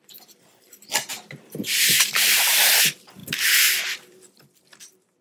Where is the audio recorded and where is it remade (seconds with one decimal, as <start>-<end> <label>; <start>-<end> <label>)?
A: 0.0-3.2 remade; 3.2-3.8 recorded; 3.8-5.2 remade

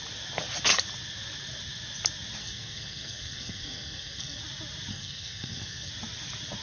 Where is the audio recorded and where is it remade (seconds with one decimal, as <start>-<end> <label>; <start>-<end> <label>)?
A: 0.0-2.4 recorded; 2.4-4.4 remade; 4.4-4.9 recorded; 4.9-5.9 remade; 5.9-6.6 recorded

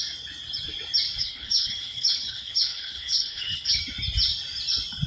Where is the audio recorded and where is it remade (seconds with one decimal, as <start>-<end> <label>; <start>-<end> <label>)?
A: 0.0-1.2 recorded; 1.2-3.8 remade; 3.8-5.1 recorded

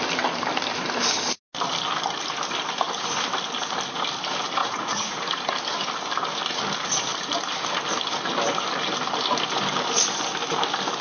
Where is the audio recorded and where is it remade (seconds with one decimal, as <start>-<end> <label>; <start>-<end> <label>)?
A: 0.0-4.6 recorded; 4.6-5.4 remade; 5.4-11.0 recorded

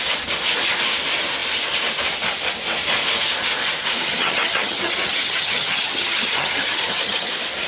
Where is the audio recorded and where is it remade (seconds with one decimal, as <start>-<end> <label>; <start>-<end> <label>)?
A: 0.0-4.1 recorded; 4.1-7.3 remade; 7.3-7.7 recorded

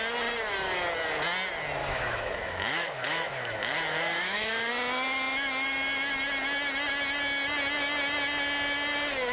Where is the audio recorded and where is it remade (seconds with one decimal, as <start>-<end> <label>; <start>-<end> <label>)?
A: 0.0-1.8 recorded; 1.8-4.7 remade; 4.7-9.3 recorded

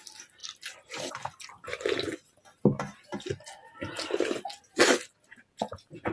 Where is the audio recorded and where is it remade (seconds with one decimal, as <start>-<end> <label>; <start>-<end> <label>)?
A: 0.0-5.3 recorded; 5.3-6.1 remade